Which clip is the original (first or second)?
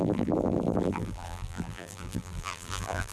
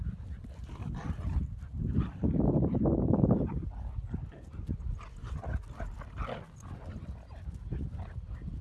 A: second